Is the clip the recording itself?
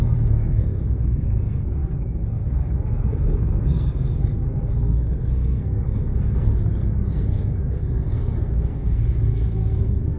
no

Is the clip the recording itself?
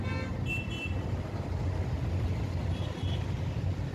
yes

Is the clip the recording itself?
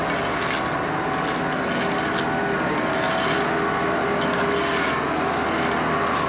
yes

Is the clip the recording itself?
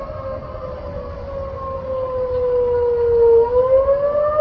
yes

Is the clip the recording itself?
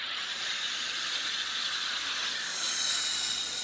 yes